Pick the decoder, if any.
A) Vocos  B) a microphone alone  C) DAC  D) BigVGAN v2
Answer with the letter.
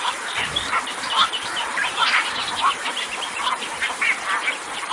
D